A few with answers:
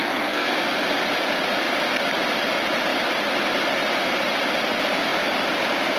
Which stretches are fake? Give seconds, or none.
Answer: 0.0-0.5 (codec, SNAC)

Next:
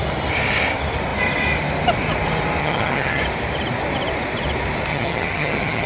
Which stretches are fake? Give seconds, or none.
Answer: 2.6-3.2 (vocoder, HiFi-GAN); 4.9-5.9

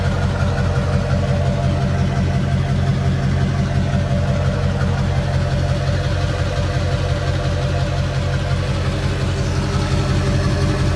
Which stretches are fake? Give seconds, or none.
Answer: none

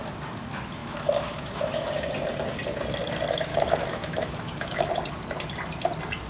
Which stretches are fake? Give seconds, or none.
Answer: 0.8-1.9 (autoencoder, DAC-VAE); 3.5-4.9